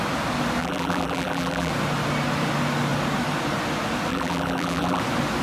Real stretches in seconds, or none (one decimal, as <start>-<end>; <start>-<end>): 0.0-0.6; 1.7-4.1; 5.0-5.4

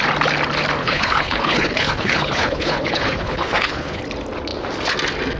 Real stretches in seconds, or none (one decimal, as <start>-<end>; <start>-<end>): 0.0-0.8; 4.0-5.4

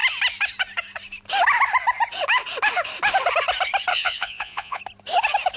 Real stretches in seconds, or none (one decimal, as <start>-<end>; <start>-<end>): 0.0-3.9; 4.8-5.6

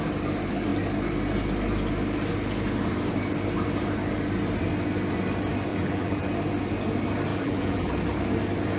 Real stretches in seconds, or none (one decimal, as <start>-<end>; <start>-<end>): 0.0-5.7; 6.3-7.3; 7.9-8.8

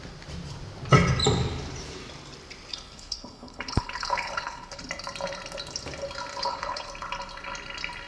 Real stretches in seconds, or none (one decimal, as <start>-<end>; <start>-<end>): 0.0-2.7; 4.8-6.3; 6.9-8.1

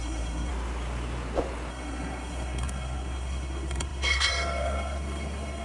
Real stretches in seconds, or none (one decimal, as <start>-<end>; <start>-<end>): 0.5-1.7

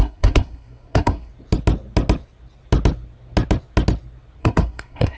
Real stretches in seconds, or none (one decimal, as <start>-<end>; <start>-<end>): 1.3-4.4